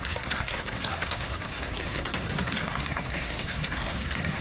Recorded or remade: remade